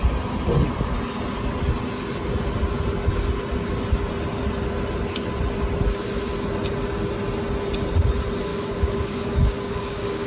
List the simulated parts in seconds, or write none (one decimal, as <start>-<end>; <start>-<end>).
8.5-10.3